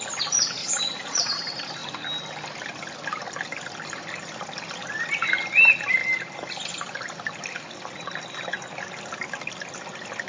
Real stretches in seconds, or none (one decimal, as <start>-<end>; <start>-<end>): 0.0-0.6; 1.4-10.3